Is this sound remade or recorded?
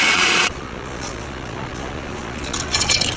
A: remade